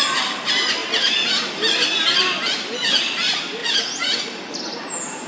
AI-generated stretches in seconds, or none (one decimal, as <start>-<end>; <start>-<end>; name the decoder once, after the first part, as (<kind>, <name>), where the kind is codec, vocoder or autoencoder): 3.6-4.5 (vocoder, Vocos)